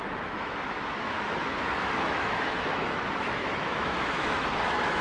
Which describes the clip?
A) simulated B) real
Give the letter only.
A